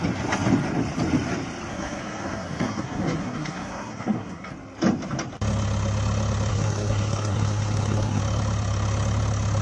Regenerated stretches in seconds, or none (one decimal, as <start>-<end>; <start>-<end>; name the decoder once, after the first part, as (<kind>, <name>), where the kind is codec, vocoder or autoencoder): 1.7-4.5 (codec, SNAC); 6.5-8.2